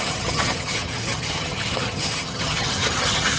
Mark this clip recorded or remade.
remade